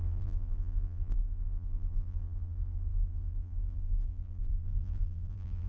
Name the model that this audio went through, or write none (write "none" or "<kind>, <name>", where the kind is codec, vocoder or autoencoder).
vocoder, BigVGAN v2